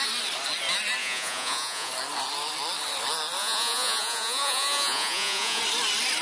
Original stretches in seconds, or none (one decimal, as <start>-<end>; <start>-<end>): 0.0-1.0; 1.9-3.4; 5.6-6.2